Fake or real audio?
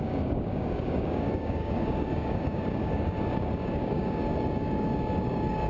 fake